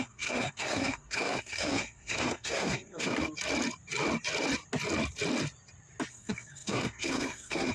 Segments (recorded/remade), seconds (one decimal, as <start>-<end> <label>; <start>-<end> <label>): 0.0-3.1 remade; 3.1-6.1 recorded; 6.1-7.7 remade